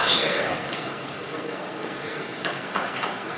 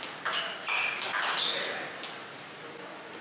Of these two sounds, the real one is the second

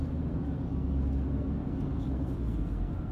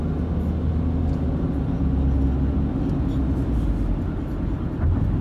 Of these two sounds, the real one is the second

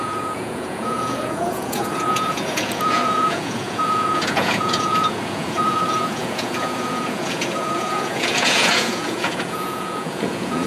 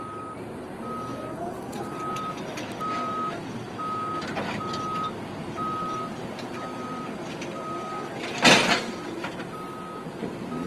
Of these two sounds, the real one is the second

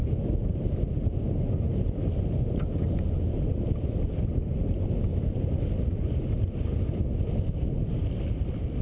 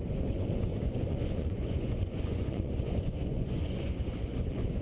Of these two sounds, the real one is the first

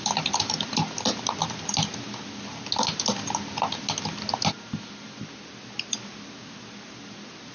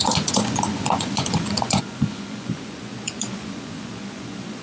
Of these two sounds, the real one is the first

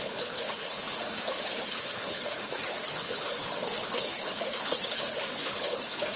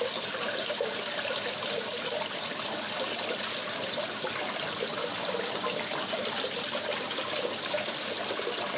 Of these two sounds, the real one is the second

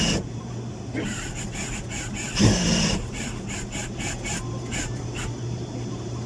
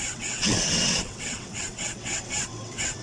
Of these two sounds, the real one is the first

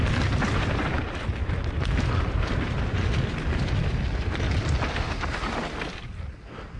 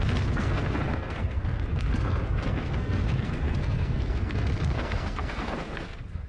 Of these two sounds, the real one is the first